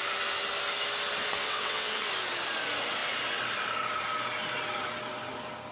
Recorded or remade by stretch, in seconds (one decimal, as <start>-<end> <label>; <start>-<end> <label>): 0.0-1.4 recorded; 1.4-2.1 remade; 2.1-5.7 recorded